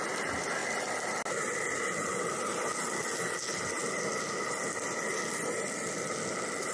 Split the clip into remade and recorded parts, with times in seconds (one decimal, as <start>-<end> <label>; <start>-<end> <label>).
0.0-6.7 recorded